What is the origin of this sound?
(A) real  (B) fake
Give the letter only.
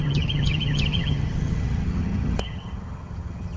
B